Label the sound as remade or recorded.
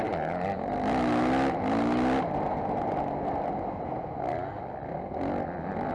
recorded